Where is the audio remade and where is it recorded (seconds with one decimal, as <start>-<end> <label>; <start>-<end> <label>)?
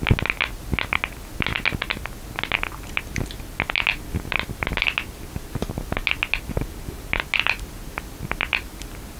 0.0-9.2 recorded